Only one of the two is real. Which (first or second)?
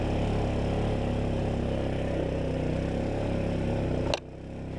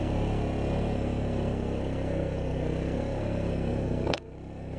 first